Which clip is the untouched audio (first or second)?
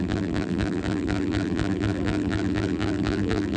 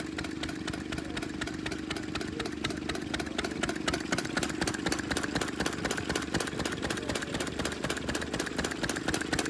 second